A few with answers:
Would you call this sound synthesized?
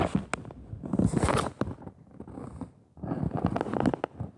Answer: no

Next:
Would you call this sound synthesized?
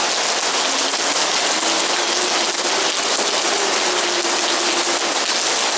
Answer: no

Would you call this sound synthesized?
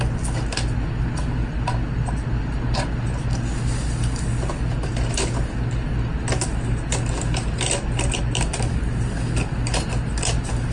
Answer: no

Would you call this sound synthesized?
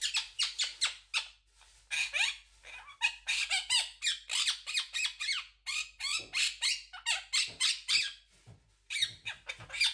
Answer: no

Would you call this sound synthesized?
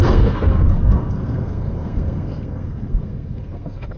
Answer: yes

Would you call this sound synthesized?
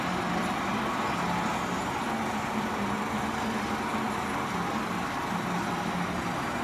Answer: no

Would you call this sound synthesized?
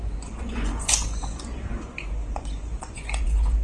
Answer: yes